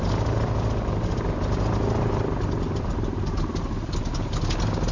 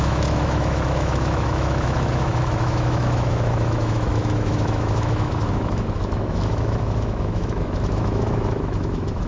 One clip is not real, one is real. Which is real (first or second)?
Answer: first